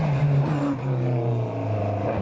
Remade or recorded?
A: recorded